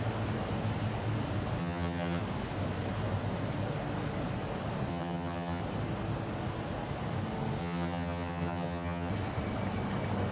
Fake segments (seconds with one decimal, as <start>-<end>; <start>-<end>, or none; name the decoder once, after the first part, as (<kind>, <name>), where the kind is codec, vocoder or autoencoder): 1.6-2.2 (vocoder, HiFi-GAN); 4.9-5.6; 7.6-9.1